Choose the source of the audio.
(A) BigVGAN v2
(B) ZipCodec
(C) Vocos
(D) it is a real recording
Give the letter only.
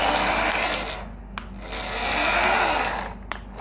D